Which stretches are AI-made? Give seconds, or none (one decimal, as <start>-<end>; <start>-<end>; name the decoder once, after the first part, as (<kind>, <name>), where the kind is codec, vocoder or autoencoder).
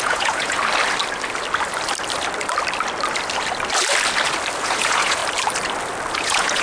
0.0-0.6 (vocoder, Vocos); 4.6-5.2; 6.1-6.6